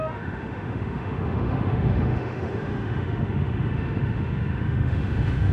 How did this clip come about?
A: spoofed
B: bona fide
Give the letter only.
A